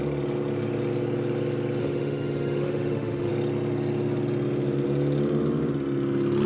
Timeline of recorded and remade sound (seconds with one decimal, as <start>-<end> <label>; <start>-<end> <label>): 0.0-1.8 recorded; 1.8-3.3 remade; 3.3-6.5 recorded